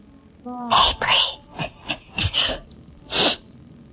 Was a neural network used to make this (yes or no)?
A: no